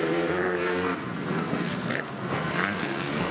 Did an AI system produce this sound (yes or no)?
yes